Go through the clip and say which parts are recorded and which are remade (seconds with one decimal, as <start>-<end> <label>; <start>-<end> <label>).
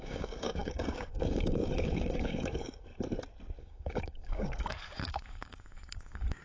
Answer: 0.0-2.9 remade; 2.9-3.6 recorded; 3.6-6.4 remade